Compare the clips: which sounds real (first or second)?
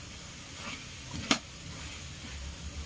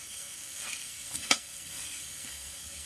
first